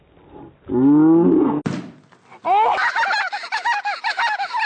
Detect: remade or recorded recorded